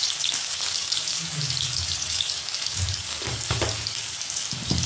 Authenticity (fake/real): fake